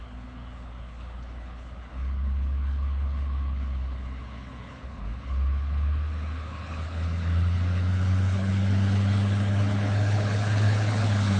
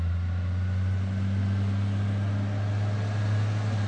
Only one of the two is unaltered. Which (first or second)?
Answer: second